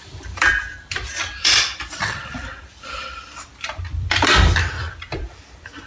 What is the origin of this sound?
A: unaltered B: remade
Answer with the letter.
B